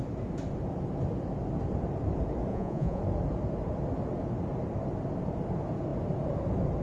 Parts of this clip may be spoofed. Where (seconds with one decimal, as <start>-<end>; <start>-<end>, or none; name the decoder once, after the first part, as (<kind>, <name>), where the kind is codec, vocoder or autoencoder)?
2.5-3.0 (vocoder, Vocos)